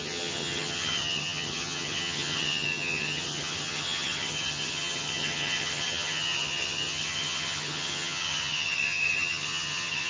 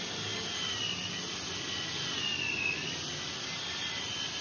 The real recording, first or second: second